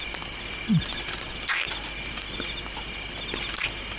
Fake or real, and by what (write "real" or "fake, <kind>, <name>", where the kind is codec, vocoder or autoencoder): real